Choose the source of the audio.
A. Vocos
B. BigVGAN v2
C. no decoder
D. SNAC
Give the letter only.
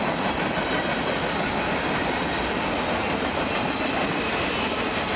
C